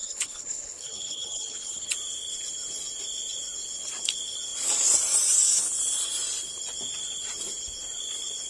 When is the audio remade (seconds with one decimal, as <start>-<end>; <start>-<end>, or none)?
0.0-1.9